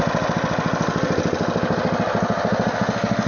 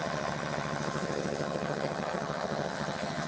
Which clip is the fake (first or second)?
second